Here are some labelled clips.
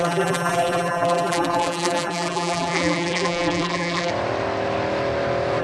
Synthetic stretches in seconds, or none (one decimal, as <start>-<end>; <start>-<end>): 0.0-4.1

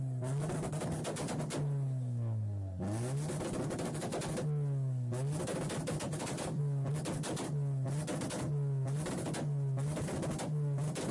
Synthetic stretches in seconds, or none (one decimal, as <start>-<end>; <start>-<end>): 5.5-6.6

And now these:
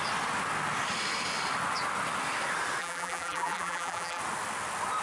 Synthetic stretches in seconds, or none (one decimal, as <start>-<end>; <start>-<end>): 2.8-4.2

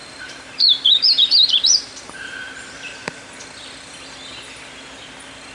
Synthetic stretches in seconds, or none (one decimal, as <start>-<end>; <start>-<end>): 0.0-3.3

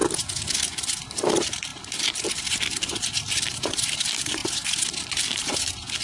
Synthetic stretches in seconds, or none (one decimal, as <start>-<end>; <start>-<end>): 0.6-4.4; 5.2-6.0